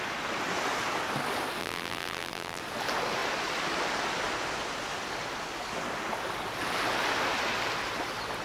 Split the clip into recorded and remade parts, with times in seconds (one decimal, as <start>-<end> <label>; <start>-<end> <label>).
0.0-1.6 recorded; 1.6-2.6 remade; 2.6-8.4 recorded